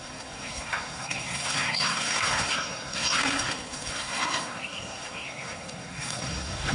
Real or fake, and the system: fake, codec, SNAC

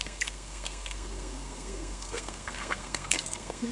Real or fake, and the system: fake, codec, SNAC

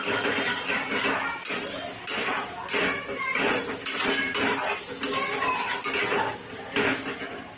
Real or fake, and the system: real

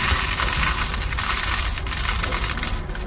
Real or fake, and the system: real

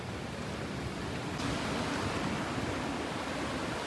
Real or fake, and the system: real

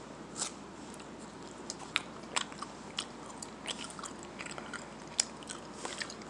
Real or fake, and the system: real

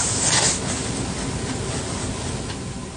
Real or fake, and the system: real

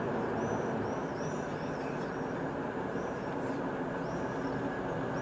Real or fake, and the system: real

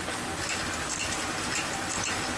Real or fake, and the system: real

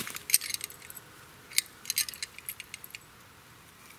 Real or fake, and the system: real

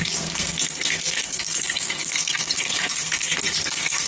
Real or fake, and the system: fake, codec, SNAC